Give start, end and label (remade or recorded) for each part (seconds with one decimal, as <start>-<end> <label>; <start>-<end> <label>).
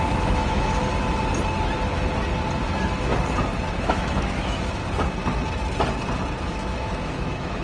0.0-0.8 remade; 0.8-2.6 recorded; 2.6-3.1 remade; 3.1-3.7 recorded; 3.7-4.8 remade; 4.8-6.4 recorded; 6.4-7.6 remade